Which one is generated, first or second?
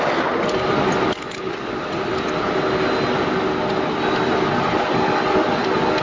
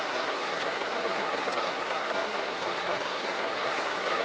second